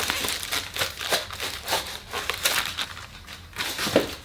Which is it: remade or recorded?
recorded